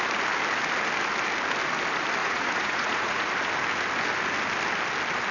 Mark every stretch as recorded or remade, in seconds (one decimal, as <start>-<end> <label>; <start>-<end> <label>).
0.0-2.2 recorded; 2.2-3.3 remade; 3.3-5.3 recorded